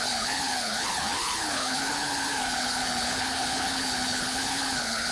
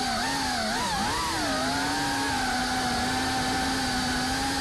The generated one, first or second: first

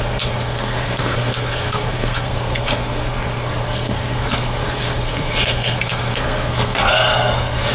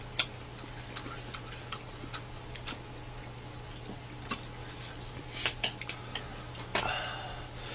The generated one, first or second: first